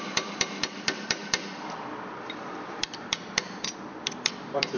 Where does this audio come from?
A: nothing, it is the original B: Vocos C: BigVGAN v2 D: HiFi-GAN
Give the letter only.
C